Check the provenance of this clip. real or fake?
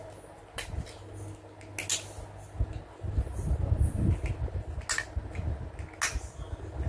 real